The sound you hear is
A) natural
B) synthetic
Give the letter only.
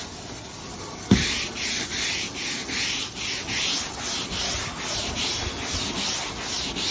A